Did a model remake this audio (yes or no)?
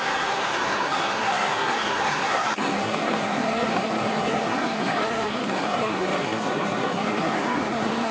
yes